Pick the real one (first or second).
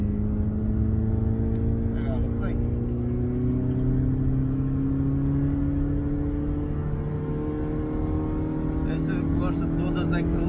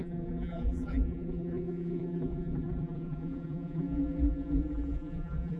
first